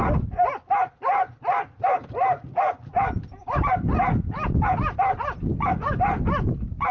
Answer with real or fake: real